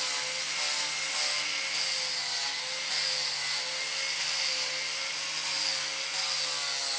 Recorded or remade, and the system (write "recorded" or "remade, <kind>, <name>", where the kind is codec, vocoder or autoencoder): recorded